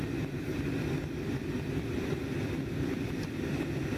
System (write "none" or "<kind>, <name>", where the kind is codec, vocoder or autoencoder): none